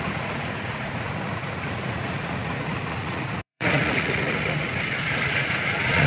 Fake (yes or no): yes